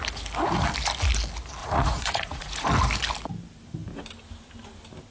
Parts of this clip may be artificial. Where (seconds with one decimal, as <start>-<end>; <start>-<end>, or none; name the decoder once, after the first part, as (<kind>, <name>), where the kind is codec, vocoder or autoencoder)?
1.6-2.7 (vocoder, Vocos)